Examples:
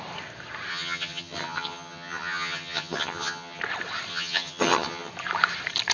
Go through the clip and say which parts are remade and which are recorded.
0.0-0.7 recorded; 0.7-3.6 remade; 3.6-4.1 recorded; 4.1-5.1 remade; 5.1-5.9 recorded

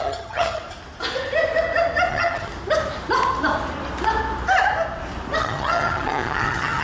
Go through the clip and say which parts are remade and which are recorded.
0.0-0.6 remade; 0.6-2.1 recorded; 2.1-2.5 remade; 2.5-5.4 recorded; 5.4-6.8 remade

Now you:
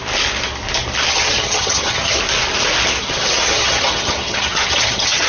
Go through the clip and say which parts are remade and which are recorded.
0.0-1.1 recorded; 1.1-2.2 remade; 2.2-3.0 recorded; 3.0-5.3 remade

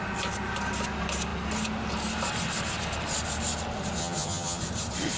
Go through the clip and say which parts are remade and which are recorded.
0.0-4.0 recorded; 4.0-4.6 remade; 4.6-5.2 recorded

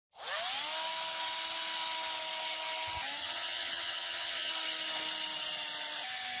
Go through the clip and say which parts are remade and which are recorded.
0.0-3.2 recorded; 3.2-4.5 remade; 4.5-6.4 recorded